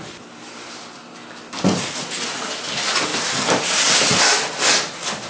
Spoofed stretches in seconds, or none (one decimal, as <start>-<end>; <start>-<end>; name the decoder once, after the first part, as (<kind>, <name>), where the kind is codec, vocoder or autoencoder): none